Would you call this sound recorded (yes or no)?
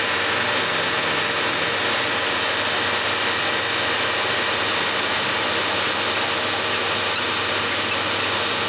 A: yes